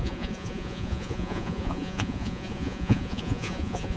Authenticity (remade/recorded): remade